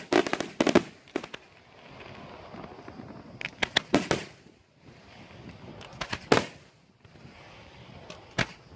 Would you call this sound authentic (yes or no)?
yes